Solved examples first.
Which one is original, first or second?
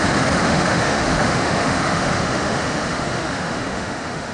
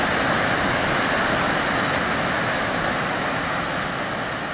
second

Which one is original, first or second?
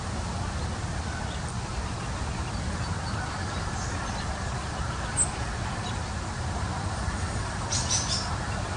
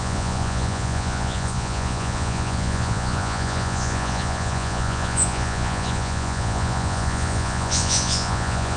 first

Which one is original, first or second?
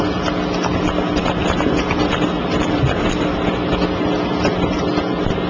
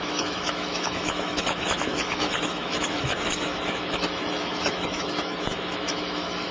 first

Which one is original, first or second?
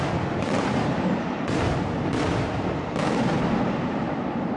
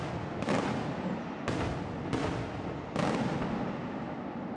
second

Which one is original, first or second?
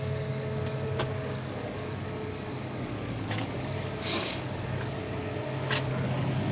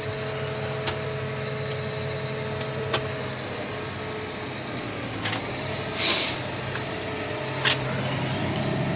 second